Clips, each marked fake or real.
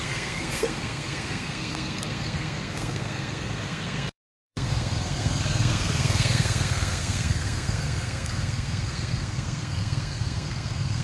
fake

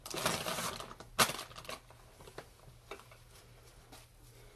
real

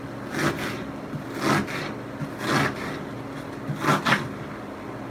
real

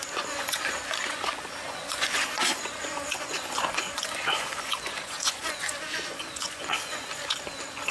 fake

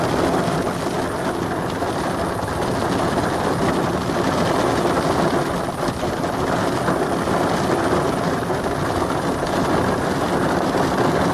real